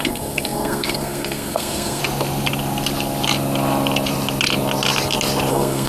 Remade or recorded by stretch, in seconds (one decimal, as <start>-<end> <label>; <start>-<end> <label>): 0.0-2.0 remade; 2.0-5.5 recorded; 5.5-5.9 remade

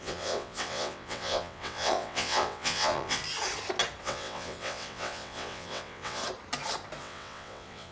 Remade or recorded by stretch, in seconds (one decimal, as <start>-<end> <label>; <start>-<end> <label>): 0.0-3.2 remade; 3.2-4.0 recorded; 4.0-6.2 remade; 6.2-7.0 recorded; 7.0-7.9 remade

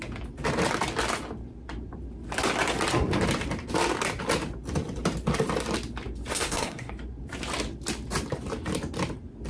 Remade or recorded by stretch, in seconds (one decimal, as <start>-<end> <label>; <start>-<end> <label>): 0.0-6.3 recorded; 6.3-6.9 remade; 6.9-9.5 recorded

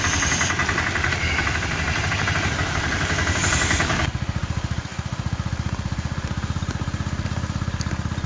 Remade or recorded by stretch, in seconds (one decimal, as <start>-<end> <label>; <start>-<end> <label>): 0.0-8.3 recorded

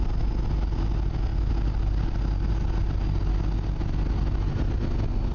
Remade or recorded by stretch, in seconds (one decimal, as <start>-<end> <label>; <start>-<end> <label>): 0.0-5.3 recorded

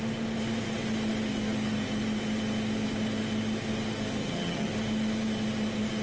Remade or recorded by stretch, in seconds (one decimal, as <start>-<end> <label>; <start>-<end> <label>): 0.0-4.2 recorded; 4.2-4.7 remade; 4.7-6.0 recorded

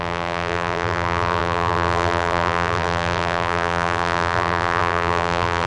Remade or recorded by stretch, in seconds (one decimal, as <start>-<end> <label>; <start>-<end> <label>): 0.0-5.7 remade